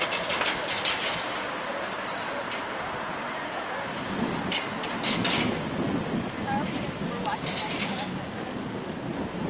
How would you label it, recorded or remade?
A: recorded